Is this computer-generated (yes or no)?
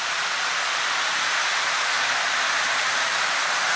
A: no